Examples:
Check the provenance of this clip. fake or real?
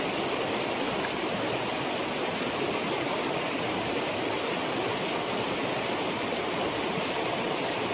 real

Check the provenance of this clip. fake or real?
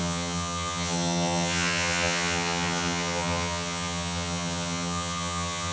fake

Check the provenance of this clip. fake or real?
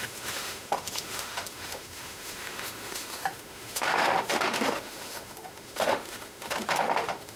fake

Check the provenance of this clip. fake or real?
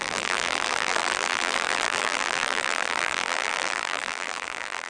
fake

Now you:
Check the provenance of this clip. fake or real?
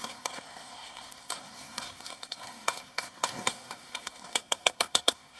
fake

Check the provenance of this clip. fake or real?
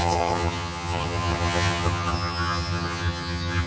fake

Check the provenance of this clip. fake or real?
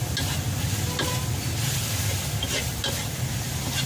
real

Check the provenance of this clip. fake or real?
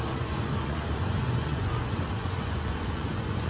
fake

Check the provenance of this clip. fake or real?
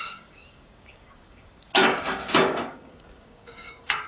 fake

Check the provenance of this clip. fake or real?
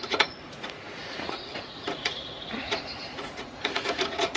fake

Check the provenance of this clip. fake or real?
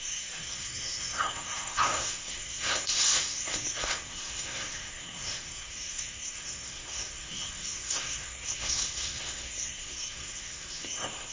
fake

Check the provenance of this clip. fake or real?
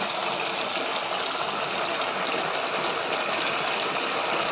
real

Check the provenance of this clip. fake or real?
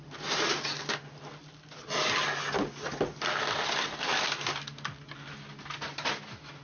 real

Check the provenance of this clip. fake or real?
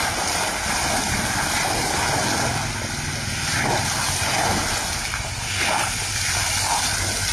real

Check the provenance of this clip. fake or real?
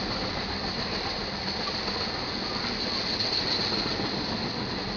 real